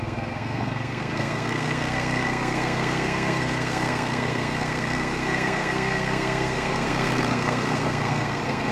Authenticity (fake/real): fake